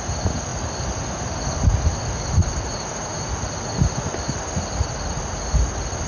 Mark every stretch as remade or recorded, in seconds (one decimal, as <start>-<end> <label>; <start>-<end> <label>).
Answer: 0.0-6.1 recorded